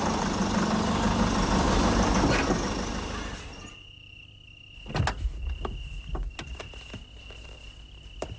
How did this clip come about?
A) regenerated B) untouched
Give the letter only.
B